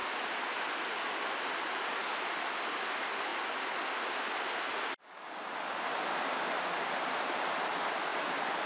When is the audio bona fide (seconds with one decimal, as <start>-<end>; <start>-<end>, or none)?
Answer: 0.0-2.3; 3.3-6.8